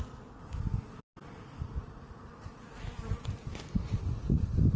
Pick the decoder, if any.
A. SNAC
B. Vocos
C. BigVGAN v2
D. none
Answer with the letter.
D